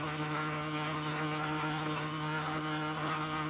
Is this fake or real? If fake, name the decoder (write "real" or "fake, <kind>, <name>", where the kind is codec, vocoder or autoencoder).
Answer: fake, codec, SNAC